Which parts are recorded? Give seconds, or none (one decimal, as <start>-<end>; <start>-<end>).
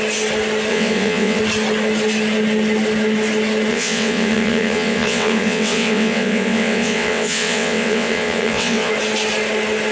0.0-0.7; 1.4-3.7; 8.9-9.9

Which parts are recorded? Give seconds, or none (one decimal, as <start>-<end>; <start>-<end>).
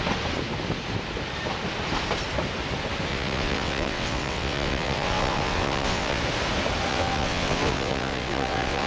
0.0-3.1; 6.2-6.9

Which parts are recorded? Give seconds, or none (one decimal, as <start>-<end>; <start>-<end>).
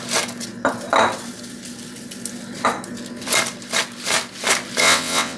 0.0-4.8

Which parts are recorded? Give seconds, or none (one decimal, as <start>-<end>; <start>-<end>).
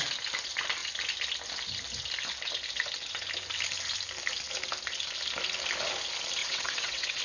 0.0-6.4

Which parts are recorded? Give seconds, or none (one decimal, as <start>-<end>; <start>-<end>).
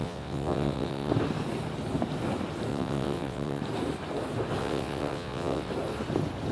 1.1-2.7; 3.6-4.6; 5.7-6.5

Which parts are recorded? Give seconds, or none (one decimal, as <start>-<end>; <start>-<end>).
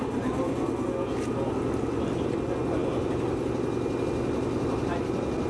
0.0-5.5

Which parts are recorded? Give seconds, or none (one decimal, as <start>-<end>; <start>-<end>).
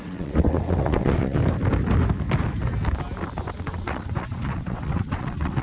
1.4-3.6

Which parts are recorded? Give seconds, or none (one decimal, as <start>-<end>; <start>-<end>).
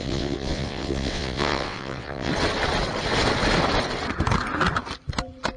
2.3-5.6